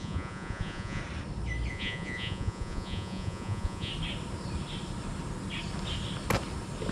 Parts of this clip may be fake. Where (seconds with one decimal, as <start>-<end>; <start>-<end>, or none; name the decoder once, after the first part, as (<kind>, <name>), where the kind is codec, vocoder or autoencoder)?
0.0-1.0 (vocoder, Vocos); 1.7-3.9